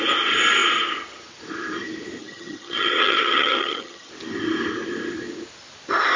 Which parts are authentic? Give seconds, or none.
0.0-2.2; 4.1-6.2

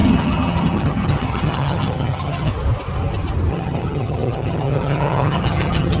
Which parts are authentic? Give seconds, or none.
2.5-3.5

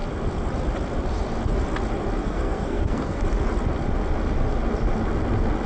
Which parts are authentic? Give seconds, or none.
0.0-2.2; 3.2-5.7

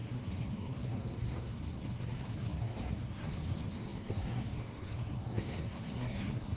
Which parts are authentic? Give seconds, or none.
none

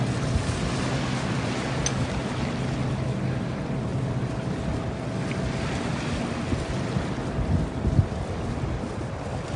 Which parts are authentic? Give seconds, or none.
0.0-9.6

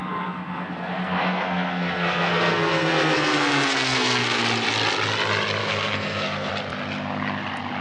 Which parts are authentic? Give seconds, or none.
4.4-5.6; 6.5-7.8